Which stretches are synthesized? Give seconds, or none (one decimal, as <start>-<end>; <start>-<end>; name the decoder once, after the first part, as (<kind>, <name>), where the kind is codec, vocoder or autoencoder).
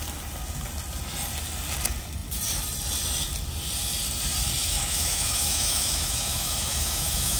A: 4.6-7.4 (autoencoder, DAC-VAE)